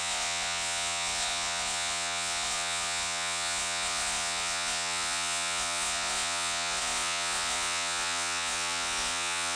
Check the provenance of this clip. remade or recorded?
remade